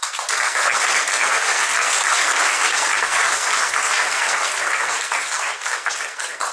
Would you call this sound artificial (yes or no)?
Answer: yes